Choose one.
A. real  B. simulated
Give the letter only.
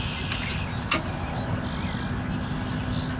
A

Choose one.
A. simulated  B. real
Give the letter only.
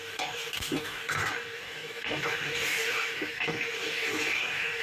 A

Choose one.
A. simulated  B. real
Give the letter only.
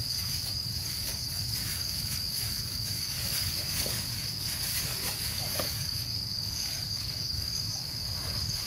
A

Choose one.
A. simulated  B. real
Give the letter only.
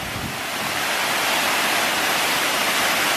B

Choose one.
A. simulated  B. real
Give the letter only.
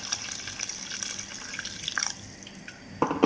B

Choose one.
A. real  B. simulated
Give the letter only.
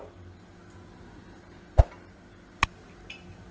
A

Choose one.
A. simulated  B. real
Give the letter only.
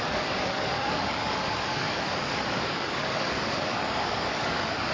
A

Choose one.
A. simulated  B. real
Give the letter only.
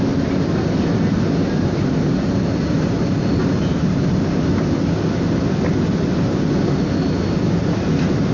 B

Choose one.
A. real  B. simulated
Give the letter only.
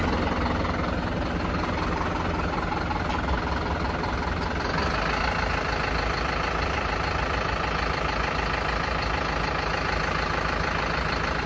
A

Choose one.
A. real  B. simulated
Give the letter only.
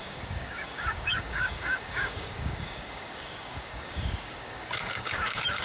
B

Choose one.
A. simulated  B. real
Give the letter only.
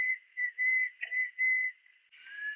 B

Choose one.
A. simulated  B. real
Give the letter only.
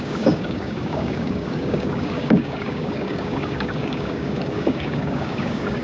A